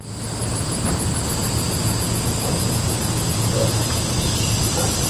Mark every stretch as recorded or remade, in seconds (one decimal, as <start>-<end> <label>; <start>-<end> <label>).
0.0-0.4 recorded; 0.4-0.9 remade; 0.9-1.4 recorded; 1.4-4.0 remade; 4.0-5.1 recorded